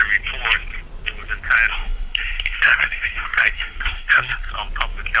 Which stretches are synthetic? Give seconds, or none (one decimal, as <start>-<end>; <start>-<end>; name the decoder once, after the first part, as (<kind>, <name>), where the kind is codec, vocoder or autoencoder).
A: 1.7-4.5 (codec, SNAC)